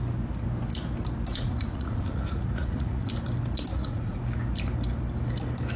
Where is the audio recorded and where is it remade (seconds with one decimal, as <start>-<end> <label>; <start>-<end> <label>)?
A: 0.0-1.3 recorded; 1.3-3.1 remade; 3.1-3.7 recorded; 3.7-4.2 remade; 4.2-5.8 recorded